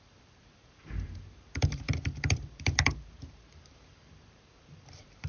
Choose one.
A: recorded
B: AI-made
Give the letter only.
B